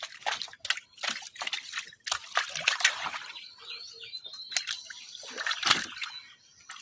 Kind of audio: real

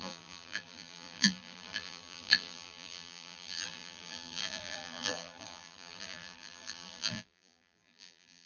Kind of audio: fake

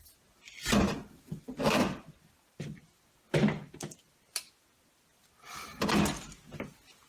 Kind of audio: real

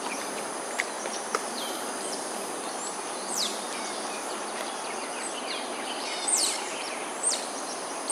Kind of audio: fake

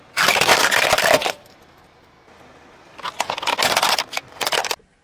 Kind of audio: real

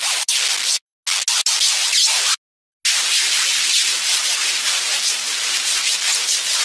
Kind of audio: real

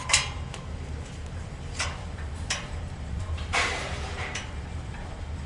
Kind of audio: fake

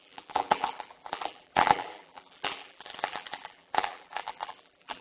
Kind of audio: fake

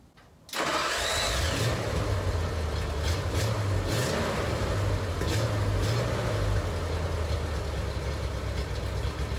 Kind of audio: real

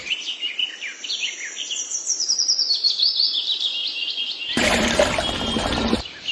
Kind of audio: fake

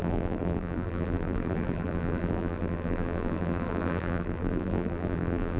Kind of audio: fake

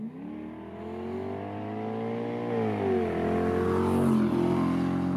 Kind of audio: real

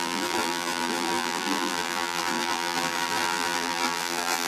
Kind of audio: fake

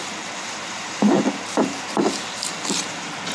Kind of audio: fake